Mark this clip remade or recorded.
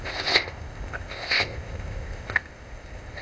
remade